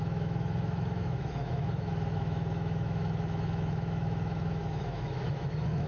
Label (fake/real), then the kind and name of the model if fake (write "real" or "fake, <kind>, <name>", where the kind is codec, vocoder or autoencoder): fake, autoencoder, DAC-VAE